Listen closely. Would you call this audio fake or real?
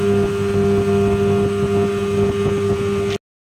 real